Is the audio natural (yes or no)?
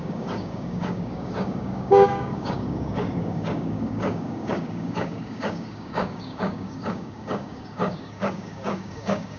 no